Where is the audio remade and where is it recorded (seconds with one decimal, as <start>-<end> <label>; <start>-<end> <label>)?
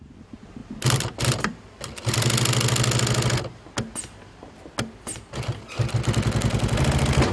0.0-7.3 recorded